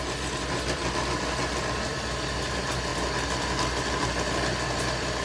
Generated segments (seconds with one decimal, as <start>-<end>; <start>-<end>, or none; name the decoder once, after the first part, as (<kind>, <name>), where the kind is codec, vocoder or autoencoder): none